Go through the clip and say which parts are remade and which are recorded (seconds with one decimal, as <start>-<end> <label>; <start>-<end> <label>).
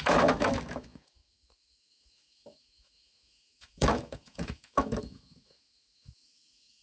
0.0-6.8 remade